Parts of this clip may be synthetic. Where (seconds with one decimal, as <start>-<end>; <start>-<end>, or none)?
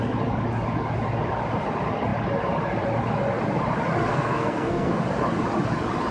4.1-5.0